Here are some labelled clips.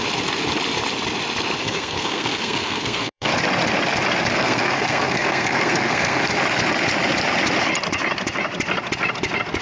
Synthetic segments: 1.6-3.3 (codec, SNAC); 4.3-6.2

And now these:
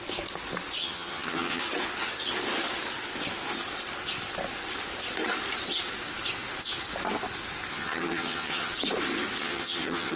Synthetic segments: 0.8-1.6 (vocoder, HiFi-GAN); 7.7-8.7; 9.4-10.2

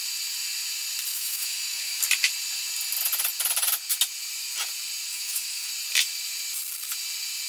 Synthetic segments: 1.1-2.0 (autoencoder, DAC-VAE); 5.1-5.7

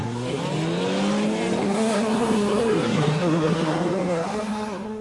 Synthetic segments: 0.0-0.4 (codec, SNAC); 1.6-5.0

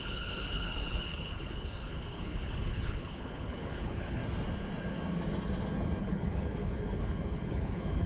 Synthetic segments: 0.0-4.2 (codec, HILCodec); 6.0-8.1

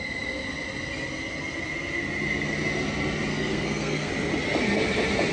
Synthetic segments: 3.3-4.1 (codec, SNAC)